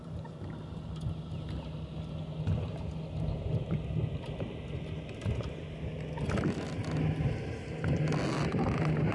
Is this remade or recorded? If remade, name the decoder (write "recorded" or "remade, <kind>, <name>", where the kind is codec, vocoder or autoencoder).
recorded